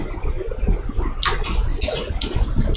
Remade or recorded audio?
recorded